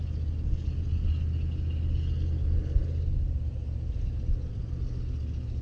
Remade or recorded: recorded